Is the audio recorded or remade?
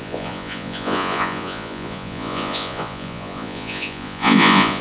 remade